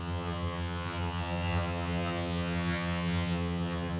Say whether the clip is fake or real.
fake